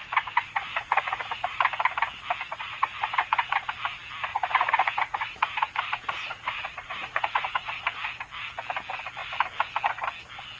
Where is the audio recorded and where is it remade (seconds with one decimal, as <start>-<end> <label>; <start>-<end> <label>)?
0.0-1.6 remade; 1.6-2.5 recorded; 2.5-3.7 remade; 3.7-4.3 recorded; 4.3-7.7 remade; 7.7-10.6 recorded